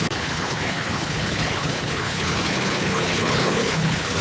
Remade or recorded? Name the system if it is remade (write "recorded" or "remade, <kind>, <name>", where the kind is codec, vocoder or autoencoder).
remade, codec, HILCodec